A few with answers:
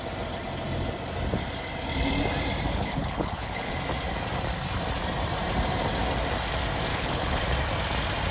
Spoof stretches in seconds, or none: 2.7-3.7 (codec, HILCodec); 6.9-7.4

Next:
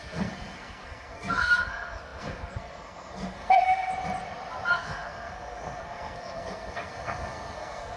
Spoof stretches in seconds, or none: 0.0-3.9 (codec, SNAC); 4.7-8.0